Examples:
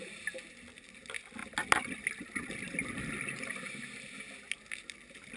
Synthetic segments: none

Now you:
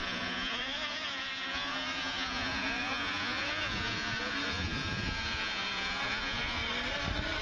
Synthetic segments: 0.0-6.6 (vocoder, Vocos)